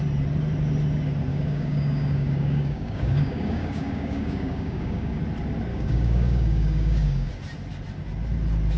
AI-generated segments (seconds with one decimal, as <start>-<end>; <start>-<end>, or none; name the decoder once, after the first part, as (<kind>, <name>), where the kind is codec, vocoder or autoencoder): 1.3-5.2 (codec, DAC); 5.7-7.3